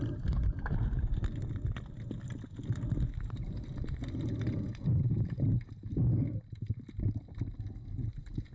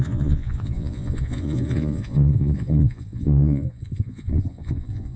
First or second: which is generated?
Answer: second